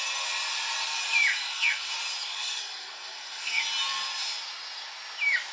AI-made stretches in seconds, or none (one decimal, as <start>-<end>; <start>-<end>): 1.3-1.9; 2.3-3.6

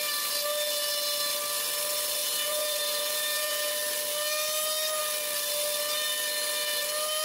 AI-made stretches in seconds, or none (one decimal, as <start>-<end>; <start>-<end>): 2.2-3.7

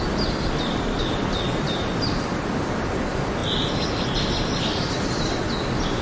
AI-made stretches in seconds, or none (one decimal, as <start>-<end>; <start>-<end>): none

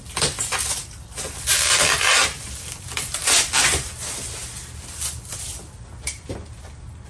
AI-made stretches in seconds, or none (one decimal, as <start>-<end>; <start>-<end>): 0.8-3.9